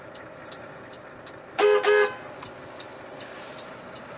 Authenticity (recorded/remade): recorded